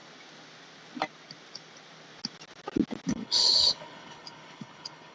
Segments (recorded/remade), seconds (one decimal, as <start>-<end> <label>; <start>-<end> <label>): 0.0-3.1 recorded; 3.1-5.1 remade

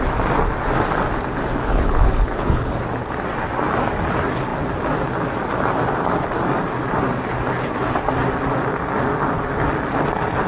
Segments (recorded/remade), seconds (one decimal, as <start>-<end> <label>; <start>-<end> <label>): 0.0-1.6 recorded; 1.6-2.8 remade; 2.8-10.5 recorded

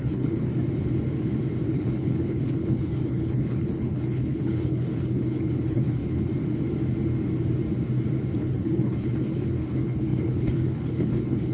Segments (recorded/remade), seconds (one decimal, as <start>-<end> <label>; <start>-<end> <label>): 0.0-0.5 remade; 0.5-1.7 recorded; 1.7-6.3 remade; 6.3-8.4 recorded; 8.4-11.5 remade

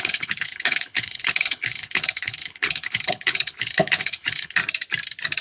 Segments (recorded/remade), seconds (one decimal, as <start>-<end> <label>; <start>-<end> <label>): 0.0-4.6 remade; 4.6-5.4 recorded